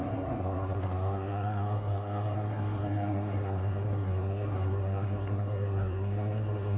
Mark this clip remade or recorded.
remade